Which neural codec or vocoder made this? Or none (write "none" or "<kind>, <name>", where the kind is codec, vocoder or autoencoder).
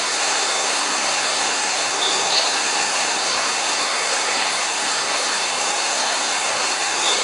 codec, SNAC